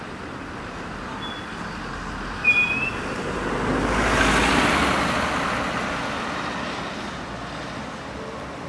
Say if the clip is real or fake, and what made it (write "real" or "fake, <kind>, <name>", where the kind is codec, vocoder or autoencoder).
real